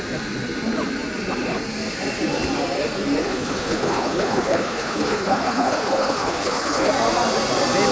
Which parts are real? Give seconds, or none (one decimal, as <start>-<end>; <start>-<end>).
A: 0.0-3.2; 6.9-7.9